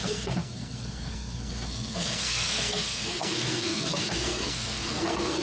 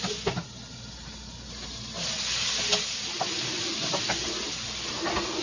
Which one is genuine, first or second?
second